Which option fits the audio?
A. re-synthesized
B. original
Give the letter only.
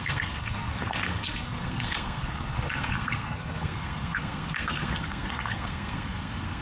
A